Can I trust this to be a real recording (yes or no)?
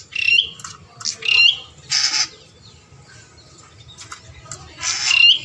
yes